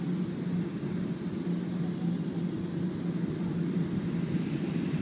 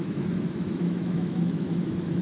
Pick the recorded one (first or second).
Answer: first